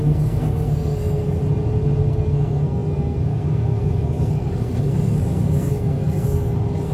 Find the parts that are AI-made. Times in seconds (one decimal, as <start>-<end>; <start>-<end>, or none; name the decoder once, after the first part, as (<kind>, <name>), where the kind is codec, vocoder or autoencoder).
0.0-1.4 (codec, SNAC); 2.0-6.9